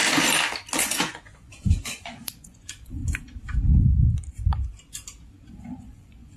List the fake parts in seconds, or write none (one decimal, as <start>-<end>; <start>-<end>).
0.8-3.0; 5.6-6.4